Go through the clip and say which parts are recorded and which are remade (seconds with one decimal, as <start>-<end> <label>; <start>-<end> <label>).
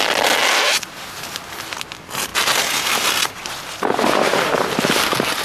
0.0-5.4 recorded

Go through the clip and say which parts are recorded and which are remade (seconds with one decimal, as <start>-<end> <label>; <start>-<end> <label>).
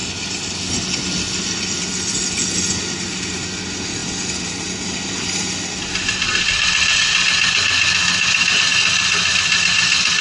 0.0-10.2 recorded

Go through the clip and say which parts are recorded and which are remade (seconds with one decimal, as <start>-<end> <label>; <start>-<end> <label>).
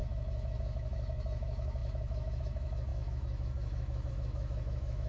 0.0-5.1 remade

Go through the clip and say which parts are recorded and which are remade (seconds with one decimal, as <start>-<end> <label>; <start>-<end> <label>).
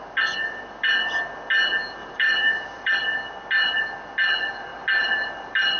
0.0-2.0 recorded; 2.0-2.9 remade; 2.9-4.7 recorded; 4.7-5.8 remade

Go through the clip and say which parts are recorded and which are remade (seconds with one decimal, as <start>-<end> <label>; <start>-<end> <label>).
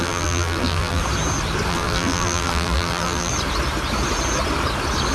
0.0-1.0 remade; 1.0-1.7 recorded; 1.7-3.3 remade; 3.3-5.1 recorded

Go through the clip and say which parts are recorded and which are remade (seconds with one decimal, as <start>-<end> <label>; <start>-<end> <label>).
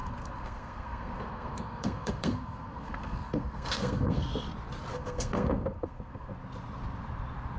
0.0-4.3 remade; 4.3-4.9 recorded; 4.9-6.3 remade; 6.3-7.6 recorded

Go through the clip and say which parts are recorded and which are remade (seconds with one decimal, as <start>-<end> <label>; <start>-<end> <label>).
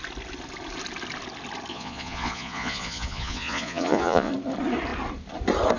0.0-1.7 recorded; 1.7-4.3 remade; 4.3-5.8 recorded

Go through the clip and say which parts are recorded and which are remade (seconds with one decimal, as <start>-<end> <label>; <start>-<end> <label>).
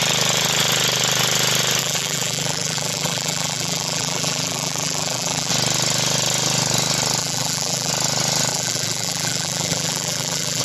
0.0-1.8 recorded; 1.8-5.5 remade; 5.5-7.2 recorded; 7.2-7.9 remade; 7.9-8.5 recorded; 8.5-10.6 remade